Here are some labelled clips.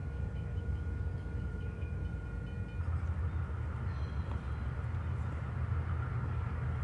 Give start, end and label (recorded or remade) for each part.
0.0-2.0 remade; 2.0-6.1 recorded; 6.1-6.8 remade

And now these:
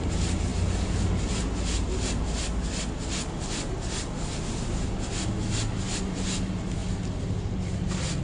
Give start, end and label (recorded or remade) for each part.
0.0-8.2 recorded

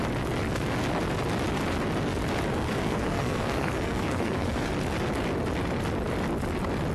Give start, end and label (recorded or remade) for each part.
0.0-2.6 recorded; 2.6-4.7 remade; 4.7-6.9 recorded

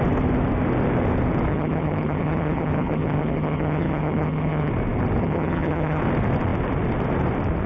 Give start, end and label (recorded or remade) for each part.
0.0-1.5 recorded; 1.5-4.7 remade; 4.7-5.2 recorded; 5.2-6.0 remade; 6.0-7.7 recorded

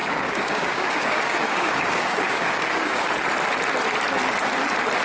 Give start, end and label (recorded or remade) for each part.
0.0-3.0 remade; 3.0-5.0 recorded

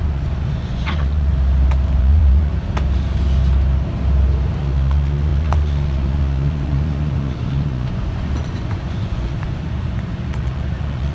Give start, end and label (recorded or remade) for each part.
0.0-1.3 remade; 1.3-2.0 recorded; 2.0-2.5 remade; 2.5-4.6 recorded; 4.6-11.1 remade

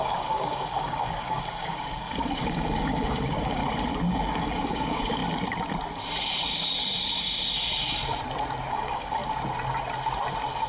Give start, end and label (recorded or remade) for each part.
0.0-3.6 remade; 3.6-4.1 recorded; 4.1-5.2 remade; 5.2-8.7 recorded; 8.7-9.2 remade; 9.2-10.7 recorded

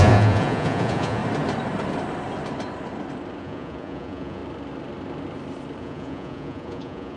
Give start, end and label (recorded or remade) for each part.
0.0-1.2 remade; 1.2-3.4 recorded; 3.4-4.4 remade; 4.4-5.8 recorded; 5.8-7.2 remade